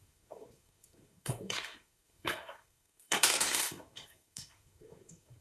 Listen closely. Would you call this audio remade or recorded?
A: remade